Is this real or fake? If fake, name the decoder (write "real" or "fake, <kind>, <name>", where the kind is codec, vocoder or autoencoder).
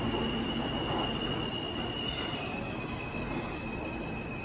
real